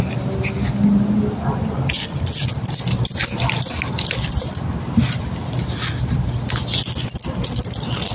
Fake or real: real